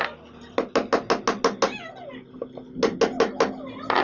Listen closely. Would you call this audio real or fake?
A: real